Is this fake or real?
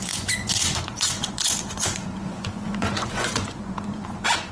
fake